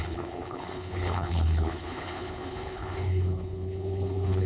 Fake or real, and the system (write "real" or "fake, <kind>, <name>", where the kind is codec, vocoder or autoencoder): fake, codec, HILCodec